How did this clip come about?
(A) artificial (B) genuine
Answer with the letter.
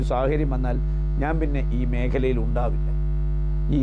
B